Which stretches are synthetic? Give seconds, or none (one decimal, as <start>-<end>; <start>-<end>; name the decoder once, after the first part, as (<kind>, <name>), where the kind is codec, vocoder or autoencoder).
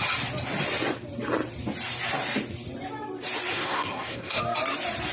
3.5-4.4 (codec, SNAC)